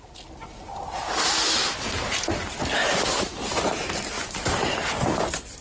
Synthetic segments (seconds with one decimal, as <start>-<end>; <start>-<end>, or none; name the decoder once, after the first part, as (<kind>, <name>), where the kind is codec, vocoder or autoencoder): 2.8-4.8 (vocoder, BigVGAN v2)